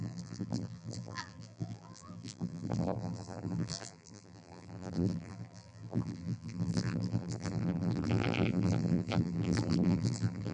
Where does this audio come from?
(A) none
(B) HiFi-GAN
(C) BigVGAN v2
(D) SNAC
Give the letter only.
C